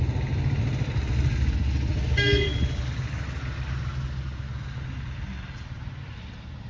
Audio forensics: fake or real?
real